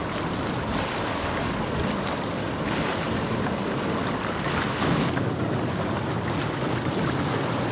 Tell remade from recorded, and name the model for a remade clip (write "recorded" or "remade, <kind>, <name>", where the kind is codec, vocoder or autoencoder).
recorded